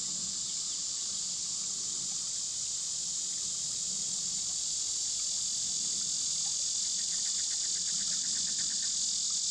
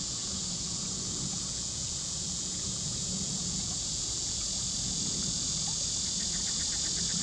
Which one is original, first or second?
first